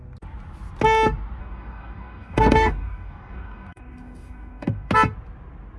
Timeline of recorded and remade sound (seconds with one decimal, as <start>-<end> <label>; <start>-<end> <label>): 0.0-1.4 recorded; 1.4-4.9 remade; 4.9-5.8 recorded